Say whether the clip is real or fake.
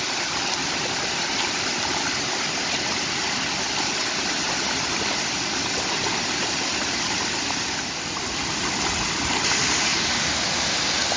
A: real